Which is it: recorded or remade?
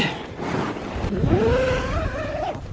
recorded